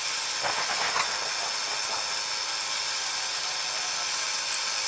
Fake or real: real